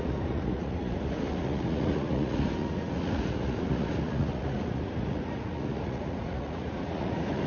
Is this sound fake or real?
fake